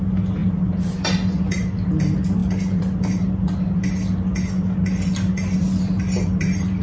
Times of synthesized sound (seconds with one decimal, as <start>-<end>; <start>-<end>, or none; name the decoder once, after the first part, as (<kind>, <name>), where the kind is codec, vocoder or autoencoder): 0.4-0.9 (vocoder, BigVGAN v2)